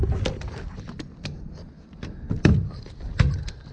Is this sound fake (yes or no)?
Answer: no